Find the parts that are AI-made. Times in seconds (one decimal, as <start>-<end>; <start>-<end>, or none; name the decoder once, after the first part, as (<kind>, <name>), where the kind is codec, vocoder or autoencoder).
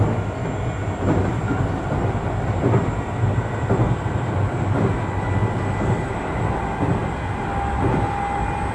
1.2-4.9 (vocoder, BigVGAN v2)